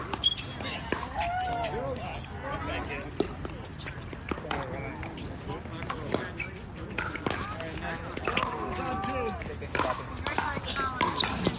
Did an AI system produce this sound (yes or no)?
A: no